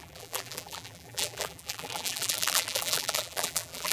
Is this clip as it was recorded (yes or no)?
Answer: no